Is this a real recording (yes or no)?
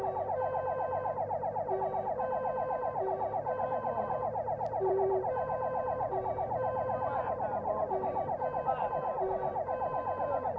no